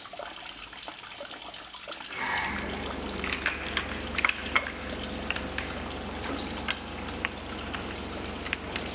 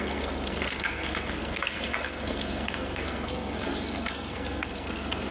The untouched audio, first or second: first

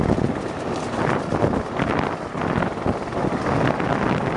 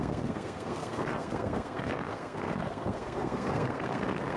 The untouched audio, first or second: first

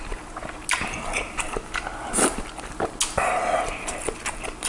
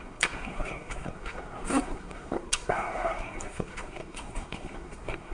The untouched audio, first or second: first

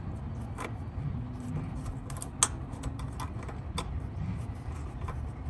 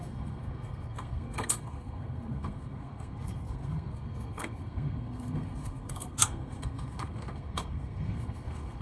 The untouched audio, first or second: first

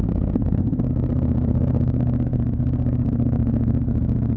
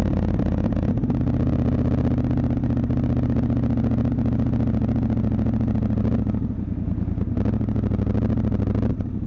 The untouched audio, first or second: second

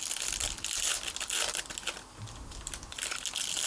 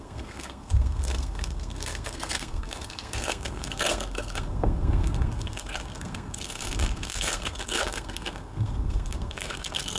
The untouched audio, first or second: first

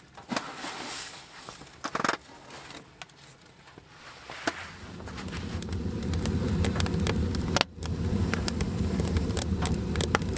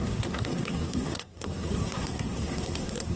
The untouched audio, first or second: first